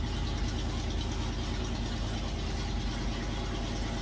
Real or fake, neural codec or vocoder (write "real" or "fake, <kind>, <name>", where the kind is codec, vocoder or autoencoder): real